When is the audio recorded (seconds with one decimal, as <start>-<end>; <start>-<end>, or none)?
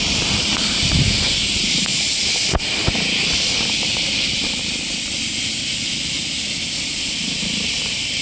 1.9-6.8